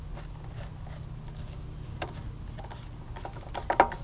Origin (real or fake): real